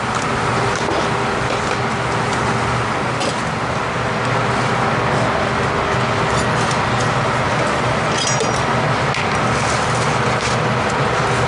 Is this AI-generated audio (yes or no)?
no